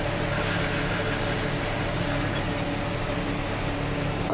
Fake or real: real